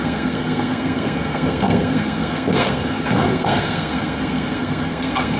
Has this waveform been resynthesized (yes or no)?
yes